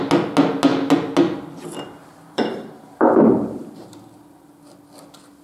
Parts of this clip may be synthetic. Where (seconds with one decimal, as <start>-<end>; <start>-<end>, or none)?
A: 2.0-4.4